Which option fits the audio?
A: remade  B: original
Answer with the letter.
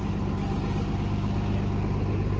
B